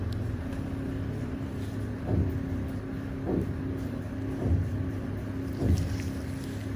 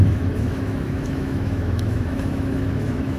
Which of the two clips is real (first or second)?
first